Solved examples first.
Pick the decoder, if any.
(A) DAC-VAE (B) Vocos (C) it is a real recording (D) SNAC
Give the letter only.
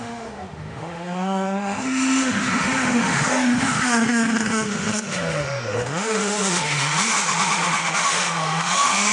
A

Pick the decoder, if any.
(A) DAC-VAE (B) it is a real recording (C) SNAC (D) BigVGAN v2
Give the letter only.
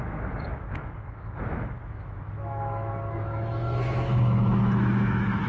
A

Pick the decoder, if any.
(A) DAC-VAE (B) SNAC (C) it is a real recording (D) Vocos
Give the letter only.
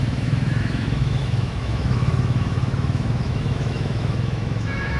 A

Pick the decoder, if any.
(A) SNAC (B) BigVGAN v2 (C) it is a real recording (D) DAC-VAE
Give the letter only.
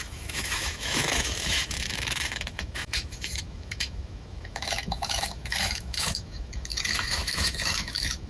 D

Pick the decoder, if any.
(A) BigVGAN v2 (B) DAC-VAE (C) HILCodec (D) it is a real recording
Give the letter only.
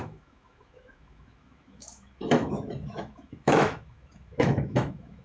B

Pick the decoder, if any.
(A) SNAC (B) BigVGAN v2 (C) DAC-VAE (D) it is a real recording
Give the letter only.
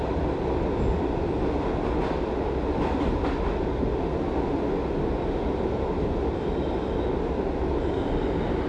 D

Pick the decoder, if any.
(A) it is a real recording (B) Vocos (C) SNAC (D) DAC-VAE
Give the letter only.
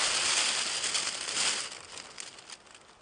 A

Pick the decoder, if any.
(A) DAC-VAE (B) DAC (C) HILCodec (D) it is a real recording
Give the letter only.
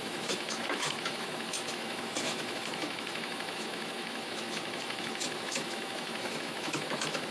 A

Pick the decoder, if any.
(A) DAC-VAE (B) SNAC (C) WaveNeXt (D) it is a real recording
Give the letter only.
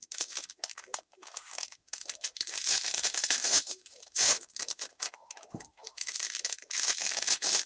A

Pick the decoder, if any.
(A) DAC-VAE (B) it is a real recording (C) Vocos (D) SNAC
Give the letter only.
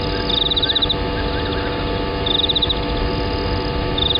B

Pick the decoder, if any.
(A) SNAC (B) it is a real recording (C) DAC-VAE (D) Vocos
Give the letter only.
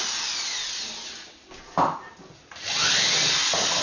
B